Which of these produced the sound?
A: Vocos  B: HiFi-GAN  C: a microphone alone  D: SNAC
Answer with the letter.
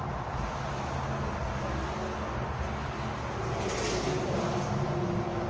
C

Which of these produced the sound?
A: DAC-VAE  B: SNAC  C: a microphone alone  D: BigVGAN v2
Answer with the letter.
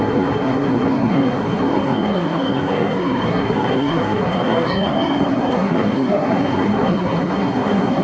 B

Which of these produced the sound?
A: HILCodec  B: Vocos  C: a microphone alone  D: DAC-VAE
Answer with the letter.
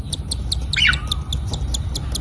C